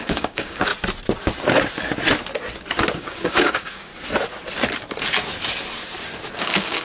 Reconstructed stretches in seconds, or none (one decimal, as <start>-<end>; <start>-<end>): 0.0-0.7; 2.9-3.9; 6.3-6.8